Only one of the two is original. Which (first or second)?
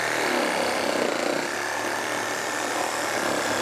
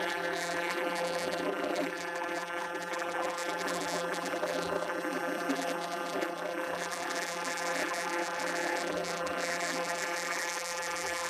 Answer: first